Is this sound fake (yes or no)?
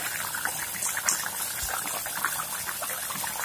no